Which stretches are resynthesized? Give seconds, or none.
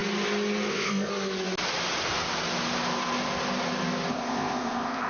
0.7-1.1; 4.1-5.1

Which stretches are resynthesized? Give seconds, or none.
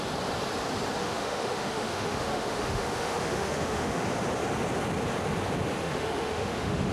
1.0-4.1; 5.8-6.9